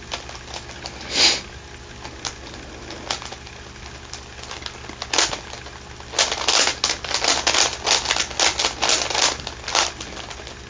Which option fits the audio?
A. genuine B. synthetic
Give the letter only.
A